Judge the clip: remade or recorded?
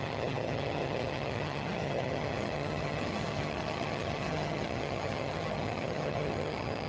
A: remade